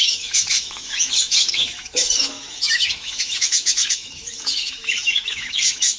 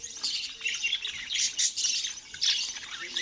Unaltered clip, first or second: second